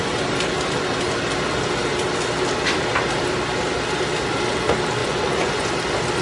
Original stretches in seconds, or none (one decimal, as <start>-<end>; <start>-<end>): 0.0-5.0; 5.7-6.2